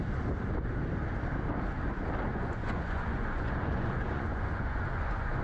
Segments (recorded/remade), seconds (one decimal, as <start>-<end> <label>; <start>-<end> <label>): 0.0-2.3 recorded; 2.3-5.4 remade

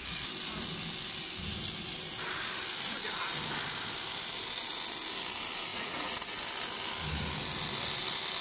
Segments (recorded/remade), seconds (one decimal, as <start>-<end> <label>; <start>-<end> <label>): 0.0-5.7 recorded; 5.7-6.4 remade; 6.4-8.4 recorded